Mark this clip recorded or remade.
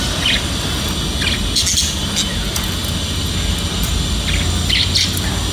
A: recorded